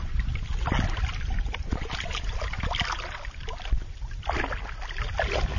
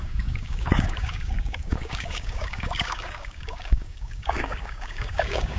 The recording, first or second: first